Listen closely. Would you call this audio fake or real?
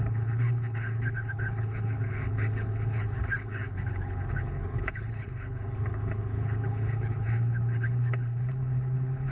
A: fake